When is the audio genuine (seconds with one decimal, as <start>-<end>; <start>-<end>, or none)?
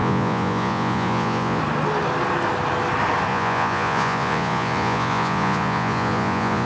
1.6-3.3